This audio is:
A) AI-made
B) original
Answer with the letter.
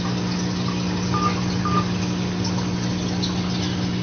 B